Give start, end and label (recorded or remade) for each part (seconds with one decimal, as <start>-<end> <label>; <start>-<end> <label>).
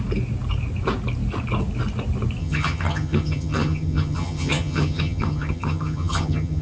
0.0-2.4 recorded; 2.4-6.6 remade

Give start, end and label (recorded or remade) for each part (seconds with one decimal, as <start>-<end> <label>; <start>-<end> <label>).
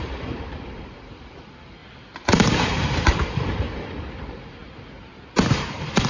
0.0-1.8 remade; 1.8-2.3 recorded; 2.3-4.6 remade; 4.6-5.5 recorded; 5.5-6.1 remade